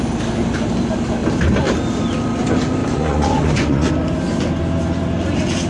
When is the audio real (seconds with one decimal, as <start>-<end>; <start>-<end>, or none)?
0.0-2.8; 3.9-5.7